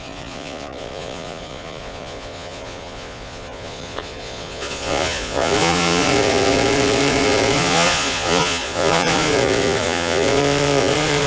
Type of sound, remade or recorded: remade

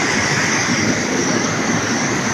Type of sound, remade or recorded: remade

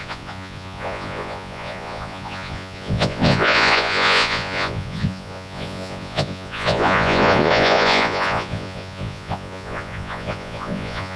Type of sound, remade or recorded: remade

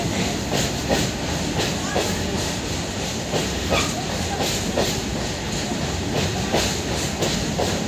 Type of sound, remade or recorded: recorded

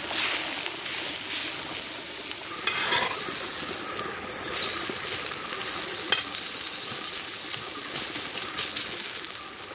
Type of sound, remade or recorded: recorded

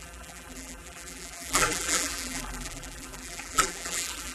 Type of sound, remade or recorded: remade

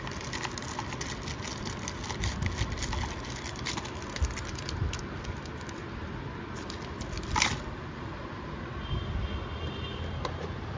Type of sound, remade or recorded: recorded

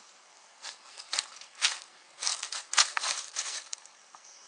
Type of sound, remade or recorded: remade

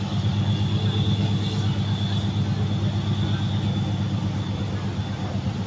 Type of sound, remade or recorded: recorded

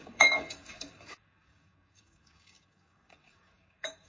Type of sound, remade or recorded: remade